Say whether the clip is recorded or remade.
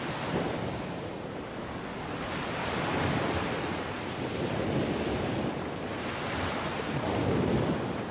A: recorded